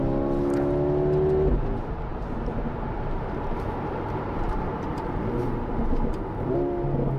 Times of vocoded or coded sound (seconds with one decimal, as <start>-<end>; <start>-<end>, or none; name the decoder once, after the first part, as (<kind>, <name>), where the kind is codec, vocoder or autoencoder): 2.1-5.2 (vocoder, BigVGAN v2)